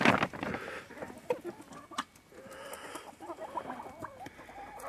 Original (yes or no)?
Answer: yes